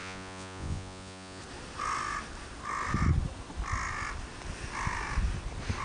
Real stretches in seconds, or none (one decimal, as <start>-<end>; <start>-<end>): 1.4-5.8